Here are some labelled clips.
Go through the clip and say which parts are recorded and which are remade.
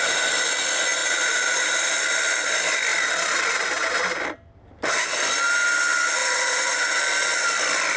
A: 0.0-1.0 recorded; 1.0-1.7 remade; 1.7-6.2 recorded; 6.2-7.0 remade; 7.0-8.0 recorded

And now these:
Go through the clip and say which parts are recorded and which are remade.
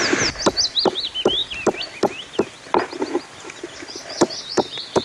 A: 0.0-5.0 recorded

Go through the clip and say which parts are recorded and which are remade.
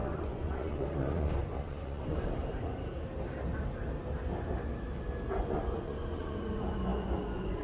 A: 0.0-2.4 remade; 2.4-5.4 recorded; 5.4-7.6 remade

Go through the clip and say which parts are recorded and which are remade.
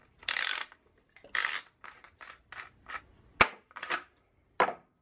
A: 0.0-5.0 recorded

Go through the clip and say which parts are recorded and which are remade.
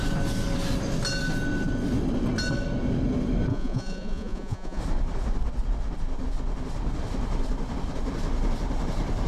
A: 0.0-3.5 recorded; 3.5-4.8 remade; 4.8-9.3 recorded